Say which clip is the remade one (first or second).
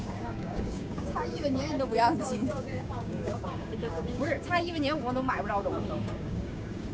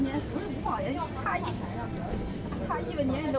first